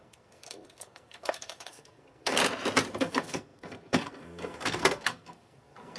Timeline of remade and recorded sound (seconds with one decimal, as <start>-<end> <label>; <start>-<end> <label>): 0.0-2.4 remade; 2.4-3.0 recorded; 3.0-6.0 remade